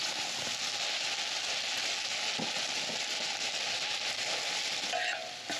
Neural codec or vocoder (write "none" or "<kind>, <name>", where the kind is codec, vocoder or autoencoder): none